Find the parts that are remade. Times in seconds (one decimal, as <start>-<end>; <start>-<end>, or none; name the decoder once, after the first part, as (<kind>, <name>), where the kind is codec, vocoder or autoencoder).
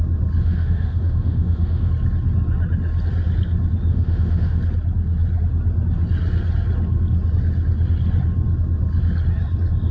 0.4-1.9 (autoencoder, DAC-VAE); 3.9-4.6